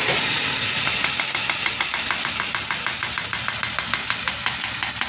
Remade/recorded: recorded